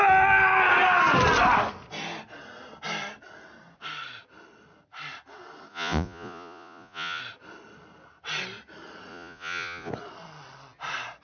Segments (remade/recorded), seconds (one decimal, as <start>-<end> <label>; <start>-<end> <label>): 0.0-5.7 recorded; 5.7-7.2 remade; 7.2-9.1 recorded; 9.1-9.9 remade; 9.9-11.2 recorded